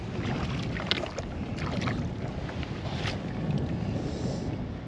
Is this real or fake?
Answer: real